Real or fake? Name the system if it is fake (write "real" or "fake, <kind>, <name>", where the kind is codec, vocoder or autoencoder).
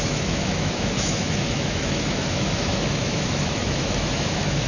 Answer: fake, autoencoder, DAC-VAE